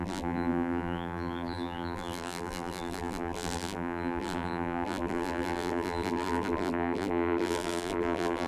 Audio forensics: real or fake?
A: fake